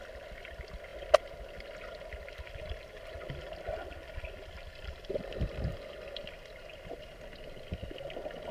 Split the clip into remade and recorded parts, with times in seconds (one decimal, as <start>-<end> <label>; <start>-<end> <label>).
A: 0.0-8.5 recorded